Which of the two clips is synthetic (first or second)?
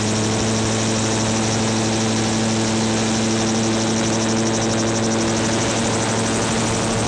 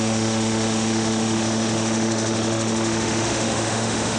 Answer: second